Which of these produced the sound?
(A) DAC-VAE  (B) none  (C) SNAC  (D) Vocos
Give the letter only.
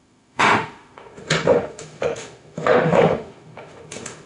A